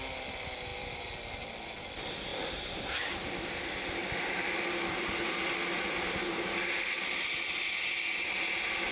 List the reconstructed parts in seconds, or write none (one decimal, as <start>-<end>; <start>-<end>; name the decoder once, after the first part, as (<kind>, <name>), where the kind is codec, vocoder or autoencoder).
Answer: 0.7-1.4 (vocoder, BigVGAN v2); 2.3-2.8